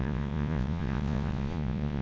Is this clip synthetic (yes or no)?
yes